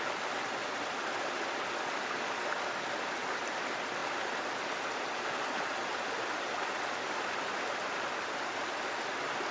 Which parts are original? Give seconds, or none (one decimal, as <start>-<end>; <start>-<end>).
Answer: 0.0-9.5